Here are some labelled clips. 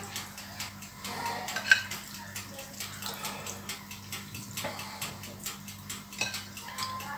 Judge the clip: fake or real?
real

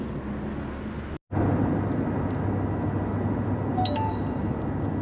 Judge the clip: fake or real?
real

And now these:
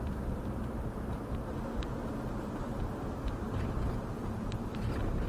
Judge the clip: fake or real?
fake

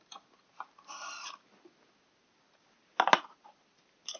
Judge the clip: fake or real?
real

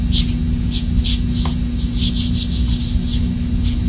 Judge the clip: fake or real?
real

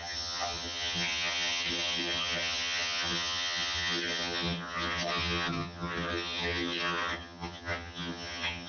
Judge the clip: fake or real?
fake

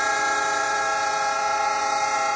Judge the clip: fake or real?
fake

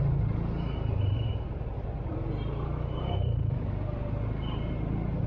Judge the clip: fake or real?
real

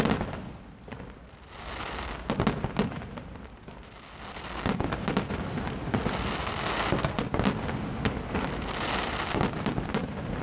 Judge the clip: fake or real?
real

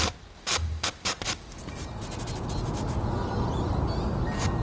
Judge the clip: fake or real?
real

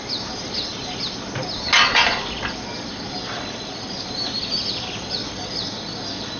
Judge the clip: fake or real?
real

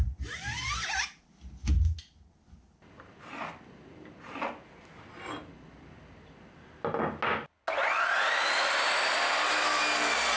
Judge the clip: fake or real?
real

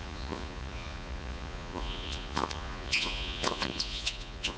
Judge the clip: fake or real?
fake